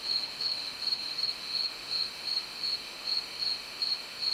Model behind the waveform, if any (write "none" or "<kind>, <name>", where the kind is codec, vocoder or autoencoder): autoencoder, DAC-VAE